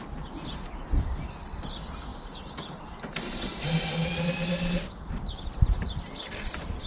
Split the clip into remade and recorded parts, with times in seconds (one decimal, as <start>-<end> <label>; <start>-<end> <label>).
0.0-6.9 recorded